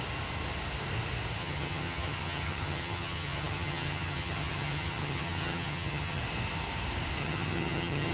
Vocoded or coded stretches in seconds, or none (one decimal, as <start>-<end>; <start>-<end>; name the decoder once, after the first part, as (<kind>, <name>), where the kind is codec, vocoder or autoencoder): 1.4-6.2 (vocoder, HiFi-GAN); 7.2-8.1

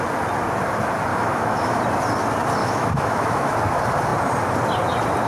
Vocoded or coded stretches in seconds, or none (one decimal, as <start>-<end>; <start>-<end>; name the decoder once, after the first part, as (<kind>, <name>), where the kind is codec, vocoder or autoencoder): 1.1-1.8 (autoencoder, DAC-VAE); 2.6-3.5

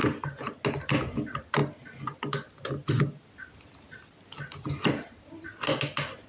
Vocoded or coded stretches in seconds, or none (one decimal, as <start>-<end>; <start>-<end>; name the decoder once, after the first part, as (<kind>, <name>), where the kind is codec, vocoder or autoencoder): none